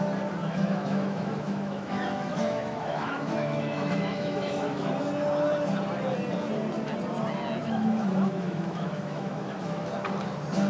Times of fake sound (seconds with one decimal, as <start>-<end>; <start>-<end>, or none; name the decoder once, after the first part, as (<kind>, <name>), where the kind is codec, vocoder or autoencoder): 0.4-4.9 (autoencoder, DAC-VAE); 7.6-9.9